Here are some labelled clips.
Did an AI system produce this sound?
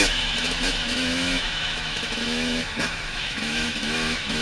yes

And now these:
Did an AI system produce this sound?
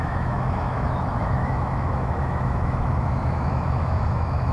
yes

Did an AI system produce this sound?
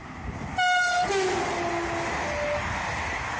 no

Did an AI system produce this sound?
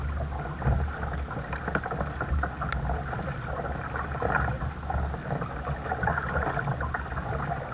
no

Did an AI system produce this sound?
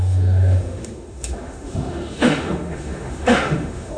yes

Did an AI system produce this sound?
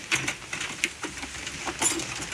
no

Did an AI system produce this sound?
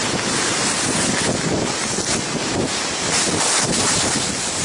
no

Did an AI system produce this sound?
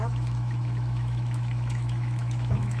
yes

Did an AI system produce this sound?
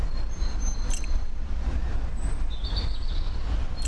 no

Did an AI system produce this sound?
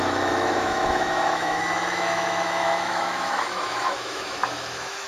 yes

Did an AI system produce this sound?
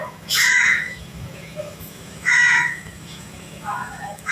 yes